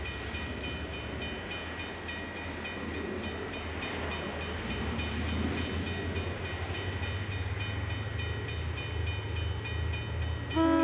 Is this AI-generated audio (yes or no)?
no